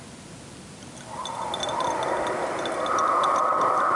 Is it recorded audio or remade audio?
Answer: recorded